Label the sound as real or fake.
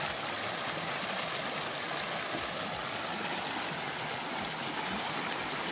real